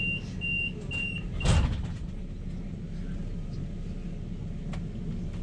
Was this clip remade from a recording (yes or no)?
no